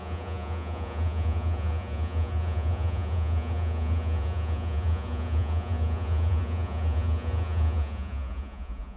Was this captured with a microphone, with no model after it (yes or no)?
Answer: no